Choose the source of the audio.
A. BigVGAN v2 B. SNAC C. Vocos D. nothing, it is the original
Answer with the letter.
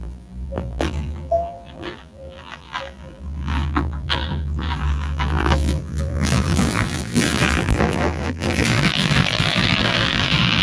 A